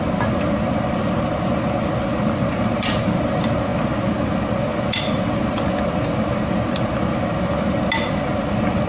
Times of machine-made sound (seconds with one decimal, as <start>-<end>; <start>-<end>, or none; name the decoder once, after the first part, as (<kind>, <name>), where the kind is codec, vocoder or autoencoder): none